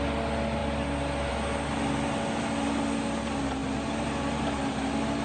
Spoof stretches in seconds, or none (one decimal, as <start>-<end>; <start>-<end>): none